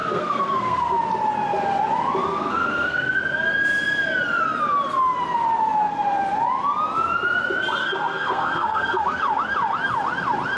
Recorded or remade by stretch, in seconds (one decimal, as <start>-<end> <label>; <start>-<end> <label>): 0.0-1.0 remade; 1.0-2.3 recorded; 2.3-3.2 remade; 3.2-7.8 recorded; 7.8-9.2 remade; 9.2-10.6 recorded